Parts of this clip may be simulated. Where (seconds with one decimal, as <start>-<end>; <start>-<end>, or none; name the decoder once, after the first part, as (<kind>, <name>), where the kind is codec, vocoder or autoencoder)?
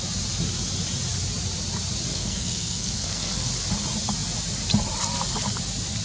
2.1-3.5 (codec, SNAC)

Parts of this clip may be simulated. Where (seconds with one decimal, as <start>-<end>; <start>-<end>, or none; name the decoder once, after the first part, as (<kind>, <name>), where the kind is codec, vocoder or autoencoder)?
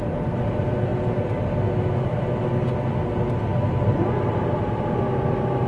none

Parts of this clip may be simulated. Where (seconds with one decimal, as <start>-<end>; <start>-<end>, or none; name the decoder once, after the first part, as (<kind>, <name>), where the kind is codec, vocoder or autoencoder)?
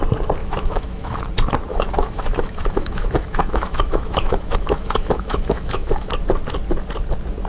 0.4-1.2 (autoencoder, DAC-VAE); 1.7-6.1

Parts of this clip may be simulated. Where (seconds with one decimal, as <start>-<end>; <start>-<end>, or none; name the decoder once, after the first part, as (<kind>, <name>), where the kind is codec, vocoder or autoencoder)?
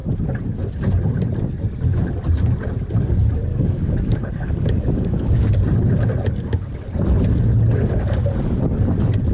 3.5-5.5 (codec, DAC)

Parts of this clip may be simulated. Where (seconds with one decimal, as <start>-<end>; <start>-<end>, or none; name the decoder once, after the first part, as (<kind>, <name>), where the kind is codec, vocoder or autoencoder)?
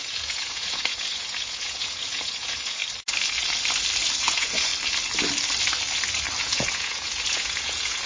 0.0-2.8 (vocoder, Vocos); 4.2-4.7; 6.4-8.1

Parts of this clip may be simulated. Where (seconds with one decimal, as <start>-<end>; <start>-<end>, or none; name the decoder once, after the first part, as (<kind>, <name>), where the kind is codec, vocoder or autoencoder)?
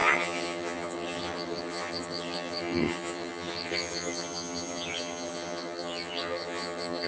0.0-7.1 (vocoder, HiFi-GAN)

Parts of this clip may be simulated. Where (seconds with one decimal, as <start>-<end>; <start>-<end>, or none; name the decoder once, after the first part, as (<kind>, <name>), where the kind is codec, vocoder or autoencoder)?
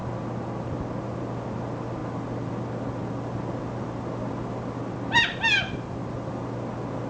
none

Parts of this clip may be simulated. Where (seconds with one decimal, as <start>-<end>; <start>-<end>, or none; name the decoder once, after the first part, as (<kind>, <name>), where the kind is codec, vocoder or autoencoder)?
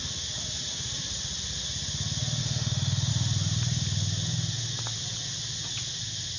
2.4-3.1 (autoencoder, DAC-VAE)